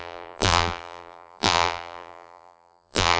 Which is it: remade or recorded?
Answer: remade